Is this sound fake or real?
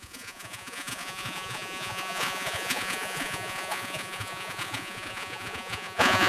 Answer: fake